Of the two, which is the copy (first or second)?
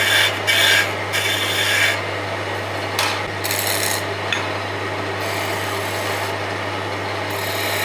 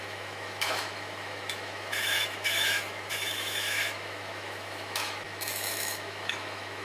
second